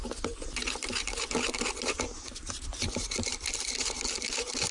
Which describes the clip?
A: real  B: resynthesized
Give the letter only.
A